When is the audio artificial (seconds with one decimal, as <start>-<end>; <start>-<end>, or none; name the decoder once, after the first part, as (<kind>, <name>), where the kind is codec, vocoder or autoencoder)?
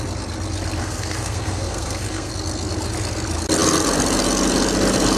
0.8-2.3 (codec, SNAC)